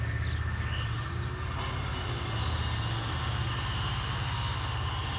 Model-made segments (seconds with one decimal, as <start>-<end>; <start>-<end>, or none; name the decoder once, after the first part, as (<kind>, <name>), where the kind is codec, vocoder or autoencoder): none